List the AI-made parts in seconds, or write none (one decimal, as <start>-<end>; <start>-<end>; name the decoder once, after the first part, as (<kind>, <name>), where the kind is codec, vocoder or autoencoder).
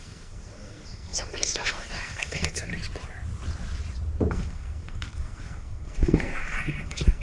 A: 0.0-2.7 (codec, SNAC); 4.3-7.2